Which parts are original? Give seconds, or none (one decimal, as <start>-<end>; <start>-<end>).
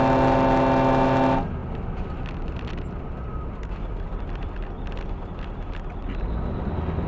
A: 0.0-7.1